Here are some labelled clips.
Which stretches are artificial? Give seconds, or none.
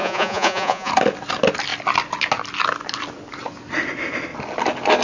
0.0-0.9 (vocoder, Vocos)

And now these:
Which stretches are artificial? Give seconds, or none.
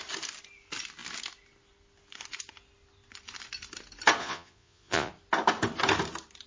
4.2-5.1 (vocoder, Vocos)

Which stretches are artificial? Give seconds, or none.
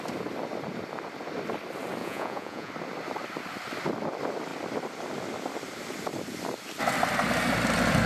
2.0-2.7 (vocoder, Vocos)